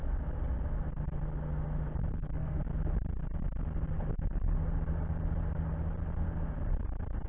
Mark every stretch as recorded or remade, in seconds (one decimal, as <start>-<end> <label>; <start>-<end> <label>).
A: 0.0-2.1 recorded; 2.1-2.6 remade; 2.6-7.3 recorded